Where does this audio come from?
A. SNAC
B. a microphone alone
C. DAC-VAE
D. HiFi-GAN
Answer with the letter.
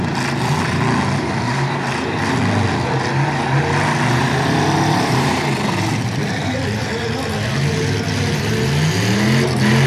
B